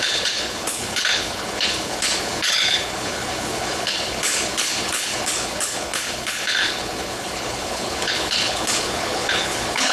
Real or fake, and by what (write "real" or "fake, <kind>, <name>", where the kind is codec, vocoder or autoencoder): fake, codec, HILCodec